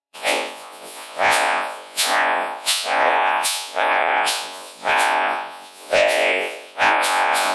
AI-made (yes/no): yes